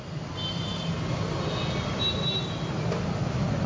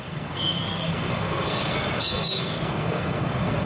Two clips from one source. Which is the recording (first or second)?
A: first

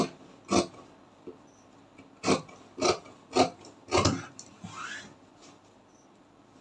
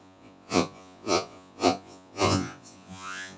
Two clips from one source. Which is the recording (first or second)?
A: first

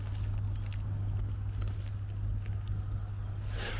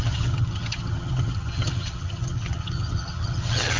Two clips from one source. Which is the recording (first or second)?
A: first